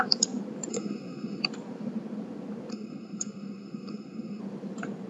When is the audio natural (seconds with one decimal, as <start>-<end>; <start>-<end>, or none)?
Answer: 0.0-0.7; 1.4-2.7; 4.4-5.1

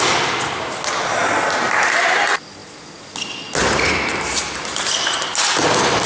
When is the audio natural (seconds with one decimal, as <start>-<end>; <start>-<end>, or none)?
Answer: 0.0-6.1